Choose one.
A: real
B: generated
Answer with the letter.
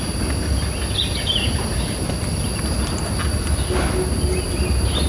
A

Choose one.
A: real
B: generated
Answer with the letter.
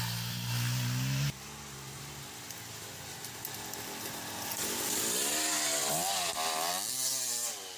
A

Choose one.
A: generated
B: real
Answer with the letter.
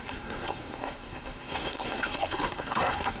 A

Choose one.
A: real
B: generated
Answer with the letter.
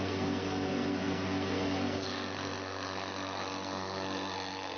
B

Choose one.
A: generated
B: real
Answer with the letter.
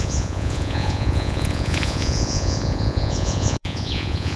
A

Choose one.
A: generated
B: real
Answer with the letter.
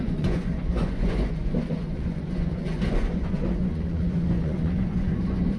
A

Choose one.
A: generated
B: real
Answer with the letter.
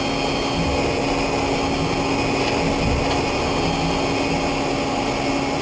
B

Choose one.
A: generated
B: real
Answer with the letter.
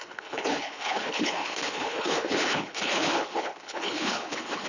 A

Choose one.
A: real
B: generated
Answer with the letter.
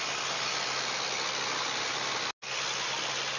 A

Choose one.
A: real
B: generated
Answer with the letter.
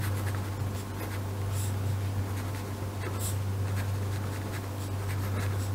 A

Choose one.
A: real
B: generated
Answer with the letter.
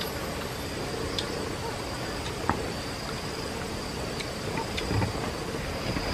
A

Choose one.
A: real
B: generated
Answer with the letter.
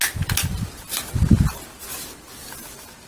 A